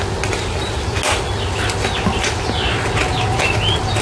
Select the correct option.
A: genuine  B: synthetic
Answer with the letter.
A